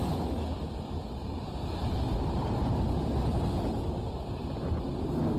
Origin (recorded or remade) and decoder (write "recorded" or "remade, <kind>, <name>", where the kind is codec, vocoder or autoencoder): recorded